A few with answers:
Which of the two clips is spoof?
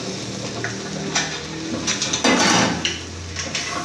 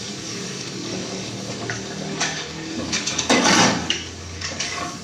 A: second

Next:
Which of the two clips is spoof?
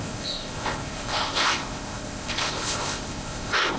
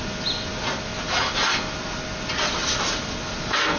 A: first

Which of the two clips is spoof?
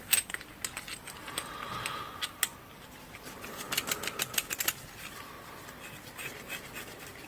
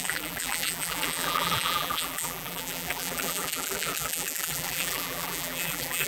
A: second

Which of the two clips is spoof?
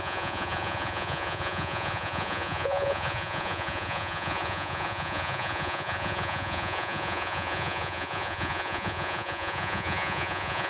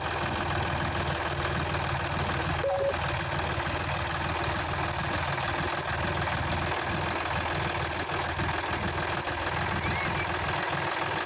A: first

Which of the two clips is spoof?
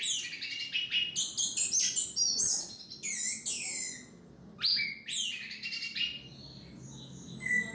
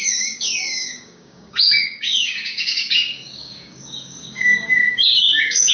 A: second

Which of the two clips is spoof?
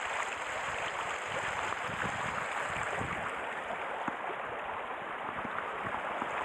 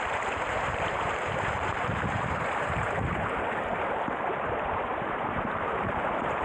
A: second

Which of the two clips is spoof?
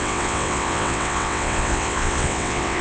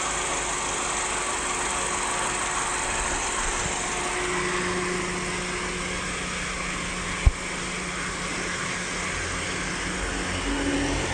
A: first